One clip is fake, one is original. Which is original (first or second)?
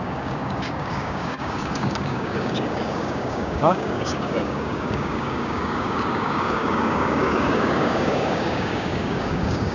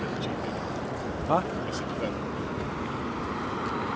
second